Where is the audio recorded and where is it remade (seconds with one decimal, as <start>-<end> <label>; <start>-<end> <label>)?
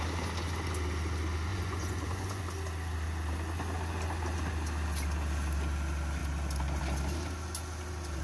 0.0-1.5 recorded; 1.5-2.4 remade; 2.4-8.2 recorded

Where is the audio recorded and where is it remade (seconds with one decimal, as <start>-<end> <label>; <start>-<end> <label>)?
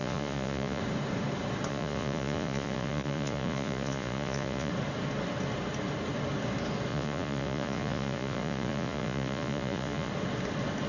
0.0-0.8 remade; 0.8-1.7 recorded; 1.7-4.7 remade; 4.7-6.9 recorded; 6.9-10.1 remade; 10.1-10.9 recorded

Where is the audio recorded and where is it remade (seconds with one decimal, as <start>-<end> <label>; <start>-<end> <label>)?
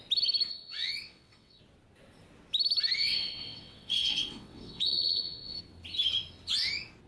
0.0-0.5 recorded; 0.5-1.6 remade; 1.6-3.0 recorded; 3.0-5.6 remade; 5.6-7.1 recorded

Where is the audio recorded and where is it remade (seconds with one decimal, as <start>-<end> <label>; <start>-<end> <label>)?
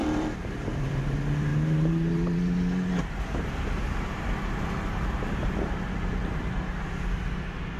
0.0-0.8 remade; 0.8-1.5 recorded; 1.5-3.2 remade; 3.2-7.8 recorded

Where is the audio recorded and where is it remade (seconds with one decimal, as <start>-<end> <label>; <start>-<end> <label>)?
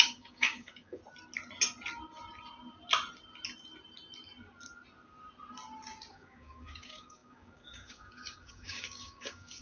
0.0-1.0 remade; 1.0-6.1 recorded; 6.1-9.6 remade